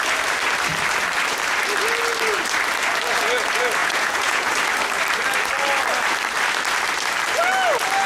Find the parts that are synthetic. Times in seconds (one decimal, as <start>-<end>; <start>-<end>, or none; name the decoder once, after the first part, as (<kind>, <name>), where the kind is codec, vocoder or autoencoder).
3.8-4.5 (vocoder, Vocos)